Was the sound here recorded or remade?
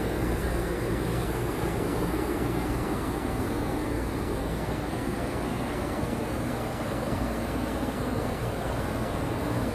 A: remade